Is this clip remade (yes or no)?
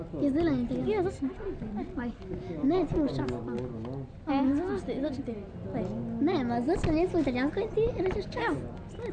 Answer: no